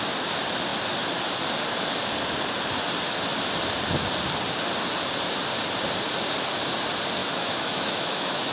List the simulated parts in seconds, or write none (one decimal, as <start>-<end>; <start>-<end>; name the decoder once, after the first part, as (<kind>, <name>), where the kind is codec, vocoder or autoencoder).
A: 7.2-8.5 (autoencoder, DAC-VAE)